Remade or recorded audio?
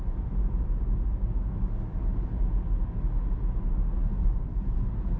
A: recorded